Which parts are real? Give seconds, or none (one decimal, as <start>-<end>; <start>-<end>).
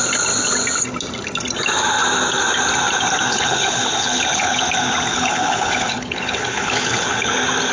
0.0-3.3; 4.6-5.1; 7.3-7.7